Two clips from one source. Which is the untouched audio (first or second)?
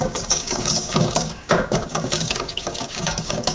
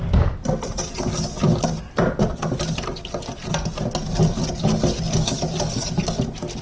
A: second